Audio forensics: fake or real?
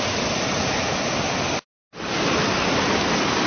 real